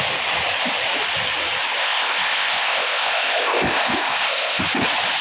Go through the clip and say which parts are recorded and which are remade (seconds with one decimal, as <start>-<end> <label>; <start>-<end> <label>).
0.0-1.8 recorded; 1.8-4.6 remade; 4.6-5.2 recorded